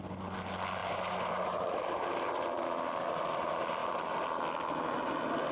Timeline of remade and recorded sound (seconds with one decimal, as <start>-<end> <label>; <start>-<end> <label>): 0.0-0.8 recorded; 0.8-2.6 remade; 2.6-3.8 recorded; 3.8-4.3 remade; 4.3-5.5 recorded